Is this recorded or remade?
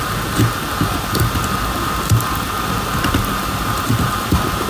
recorded